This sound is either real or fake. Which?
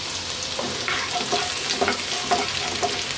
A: real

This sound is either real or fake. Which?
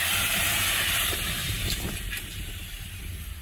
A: fake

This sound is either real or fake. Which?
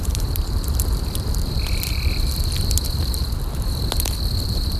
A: fake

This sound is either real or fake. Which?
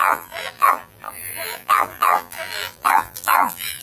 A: fake